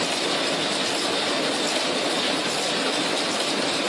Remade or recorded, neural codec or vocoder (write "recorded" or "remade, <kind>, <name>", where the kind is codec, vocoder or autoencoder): recorded